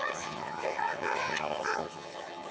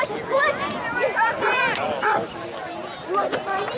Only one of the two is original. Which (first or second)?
second